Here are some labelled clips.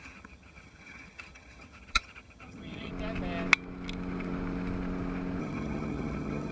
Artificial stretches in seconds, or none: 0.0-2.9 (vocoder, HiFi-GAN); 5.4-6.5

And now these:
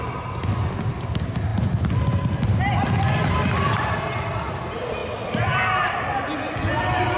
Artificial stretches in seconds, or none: none